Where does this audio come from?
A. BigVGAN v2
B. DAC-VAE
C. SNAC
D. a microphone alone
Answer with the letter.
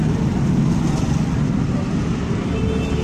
D